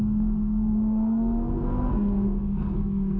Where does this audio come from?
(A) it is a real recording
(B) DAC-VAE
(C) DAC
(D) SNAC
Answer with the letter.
D